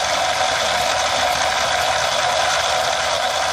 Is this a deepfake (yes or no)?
no